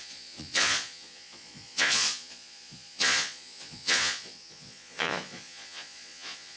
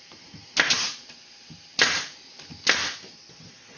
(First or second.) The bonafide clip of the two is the second